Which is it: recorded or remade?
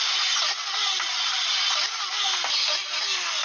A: recorded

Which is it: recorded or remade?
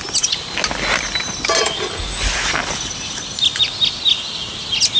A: recorded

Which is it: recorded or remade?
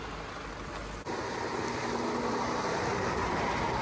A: recorded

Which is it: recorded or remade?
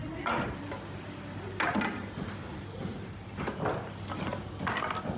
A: recorded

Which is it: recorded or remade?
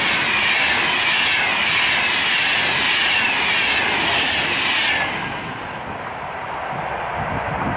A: recorded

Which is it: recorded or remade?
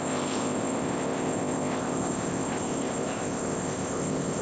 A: remade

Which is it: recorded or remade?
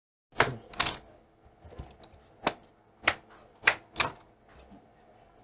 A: recorded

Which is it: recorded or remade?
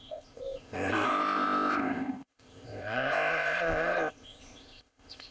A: remade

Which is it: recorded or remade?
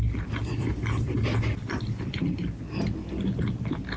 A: recorded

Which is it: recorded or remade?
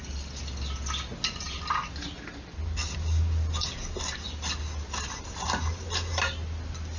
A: recorded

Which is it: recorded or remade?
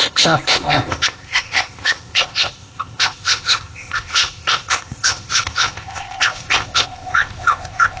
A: remade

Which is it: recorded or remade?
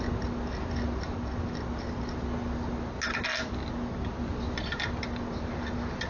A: recorded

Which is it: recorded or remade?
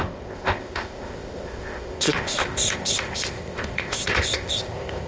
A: remade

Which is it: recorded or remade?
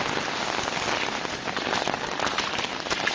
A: recorded